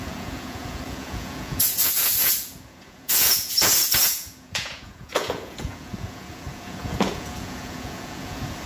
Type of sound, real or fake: fake